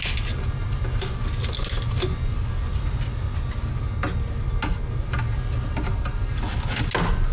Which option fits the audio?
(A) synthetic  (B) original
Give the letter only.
B